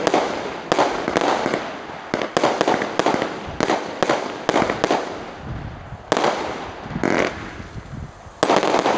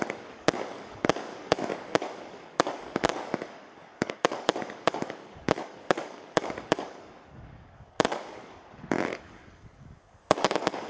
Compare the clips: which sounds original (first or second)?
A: first